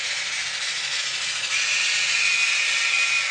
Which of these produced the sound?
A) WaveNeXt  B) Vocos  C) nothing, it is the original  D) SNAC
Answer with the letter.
C